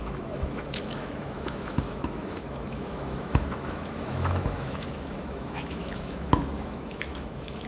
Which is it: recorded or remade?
remade